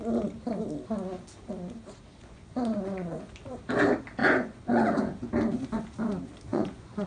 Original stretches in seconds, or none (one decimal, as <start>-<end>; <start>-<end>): 0.0-2.1; 3.3-4.2; 5.2-6.5